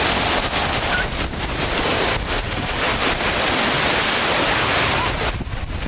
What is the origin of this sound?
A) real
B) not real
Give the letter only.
A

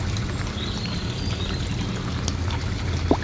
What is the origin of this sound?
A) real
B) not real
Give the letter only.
A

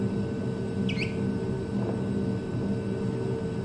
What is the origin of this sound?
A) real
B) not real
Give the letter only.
A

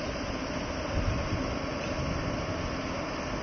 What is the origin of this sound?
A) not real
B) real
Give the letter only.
B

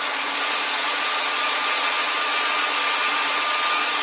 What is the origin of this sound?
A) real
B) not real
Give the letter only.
B